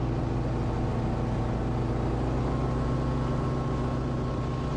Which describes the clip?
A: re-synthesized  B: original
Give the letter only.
B